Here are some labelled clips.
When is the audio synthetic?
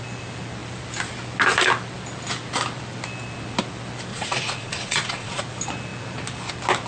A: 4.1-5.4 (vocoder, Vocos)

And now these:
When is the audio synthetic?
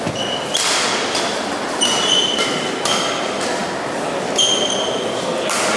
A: none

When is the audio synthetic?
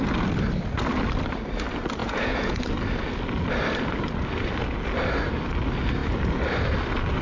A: 2.0-2.6 (vocoder, Vocos)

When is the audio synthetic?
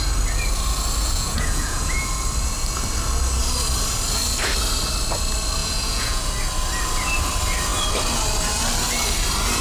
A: 1.0-2.1 (vocoder, Vocos); 5.6-6.3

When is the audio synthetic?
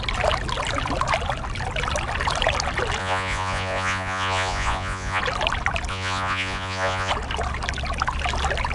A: 3.0-5.2 (vocoder, Vocos); 5.9-7.1